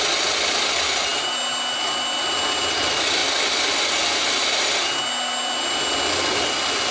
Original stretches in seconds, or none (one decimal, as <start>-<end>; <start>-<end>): 0.0-6.9